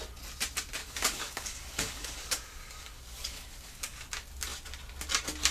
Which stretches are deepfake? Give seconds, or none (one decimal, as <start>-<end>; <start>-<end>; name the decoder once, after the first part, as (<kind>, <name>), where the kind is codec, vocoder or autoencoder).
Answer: 0.8-4.1 (codec, DAC)